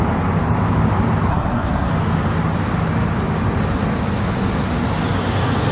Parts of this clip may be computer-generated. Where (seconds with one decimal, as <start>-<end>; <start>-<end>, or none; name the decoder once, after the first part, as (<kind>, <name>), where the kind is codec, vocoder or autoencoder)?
1.3-1.9 (codec, SNAC)